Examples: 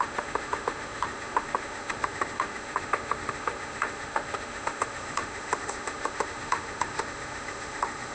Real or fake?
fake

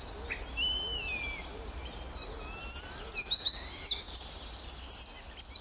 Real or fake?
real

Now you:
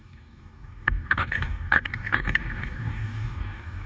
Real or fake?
fake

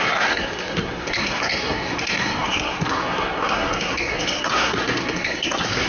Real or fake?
fake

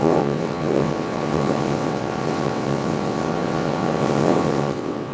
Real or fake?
fake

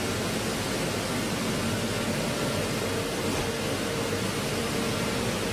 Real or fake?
real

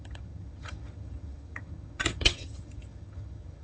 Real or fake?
fake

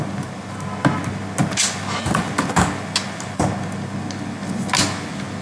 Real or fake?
real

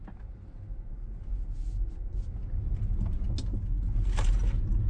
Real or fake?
real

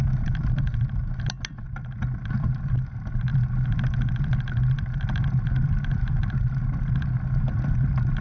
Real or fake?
real